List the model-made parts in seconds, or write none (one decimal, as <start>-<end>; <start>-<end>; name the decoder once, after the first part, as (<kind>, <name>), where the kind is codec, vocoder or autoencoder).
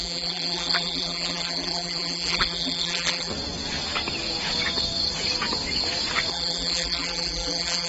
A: 0.0-3.3 (vocoder, BigVGAN v2); 6.3-7.9